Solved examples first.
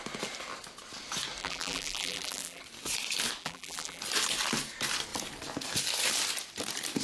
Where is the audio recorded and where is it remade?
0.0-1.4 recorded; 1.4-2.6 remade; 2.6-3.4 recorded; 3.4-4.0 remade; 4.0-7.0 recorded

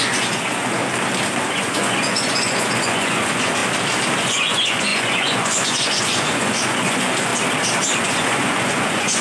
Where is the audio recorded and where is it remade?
0.0-0.8 remade; 0.8-1.5 recorded; 1.5-3.6 remade; 3.6-4.2 recorded; 4.2-7.3 remade; 7.3-8.0 recorded; 8.0-9.2 remade

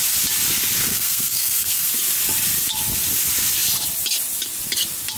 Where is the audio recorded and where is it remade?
0.0-0.9 recorded; 0.9-1.9 remade; 1.9-5.2 recorded